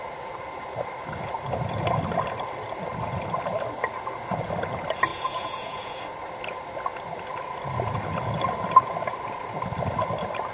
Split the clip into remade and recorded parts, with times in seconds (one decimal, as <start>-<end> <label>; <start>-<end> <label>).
0.0-5.1 recorded; 5.1-6.0 remade; 6.0-10.5 recorded